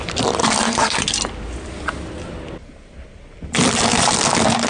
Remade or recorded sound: remade